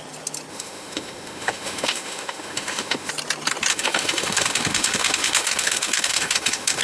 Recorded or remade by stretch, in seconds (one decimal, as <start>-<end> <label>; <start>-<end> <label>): 0.0-0.5 recorded; 0.5-3.1 remade; 3.1-3.7 recorded; 3.7-6.8 remade